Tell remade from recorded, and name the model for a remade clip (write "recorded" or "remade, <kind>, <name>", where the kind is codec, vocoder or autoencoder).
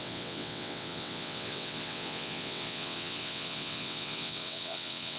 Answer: remade, vocoder, WaveNeXt